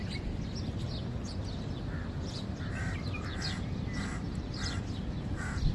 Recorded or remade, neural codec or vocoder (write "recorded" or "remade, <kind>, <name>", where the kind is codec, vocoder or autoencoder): recorded